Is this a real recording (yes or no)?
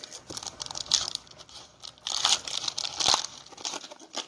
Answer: no